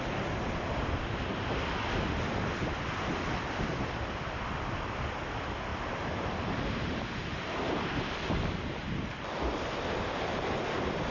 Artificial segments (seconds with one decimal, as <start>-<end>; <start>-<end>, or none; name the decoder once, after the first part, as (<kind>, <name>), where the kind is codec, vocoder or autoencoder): none